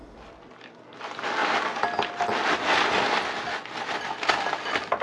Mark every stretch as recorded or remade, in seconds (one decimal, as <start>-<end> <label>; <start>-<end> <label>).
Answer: 0.0-5.0 recorded

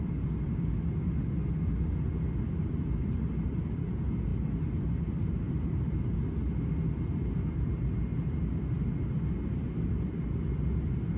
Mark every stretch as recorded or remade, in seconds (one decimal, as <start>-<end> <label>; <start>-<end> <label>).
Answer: 0.0-11.2 recorded

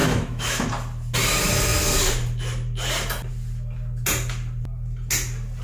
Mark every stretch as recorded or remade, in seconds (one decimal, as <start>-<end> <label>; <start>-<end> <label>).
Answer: 0.0-0.7 remade; 0.7-5.6 recorded

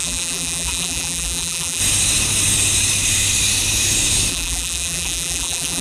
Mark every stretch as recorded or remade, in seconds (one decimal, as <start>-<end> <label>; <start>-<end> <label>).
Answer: 0.0-1.8 remade; 1.8-4.3 recorded; 4.3-5.8 remade

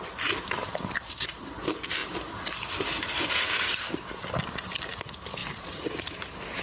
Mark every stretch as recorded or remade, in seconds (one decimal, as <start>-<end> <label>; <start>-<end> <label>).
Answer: 0.0-5.4 recorded; 5.4-6.6 remade

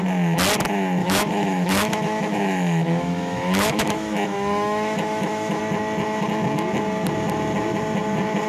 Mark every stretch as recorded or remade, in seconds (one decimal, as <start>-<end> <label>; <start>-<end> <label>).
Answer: 0.0-1.0 recorded; 1.0-5.6 remade; 5.6-8.5 recorded

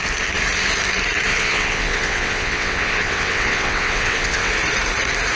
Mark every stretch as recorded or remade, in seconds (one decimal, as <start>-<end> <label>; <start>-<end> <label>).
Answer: 0.0-1.3 recorded; 1.3-4.5 remade; 4.5-5.4 recorded